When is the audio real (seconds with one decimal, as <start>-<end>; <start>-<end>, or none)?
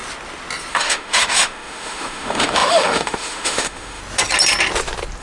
0.0-0.7; 4.0-5.2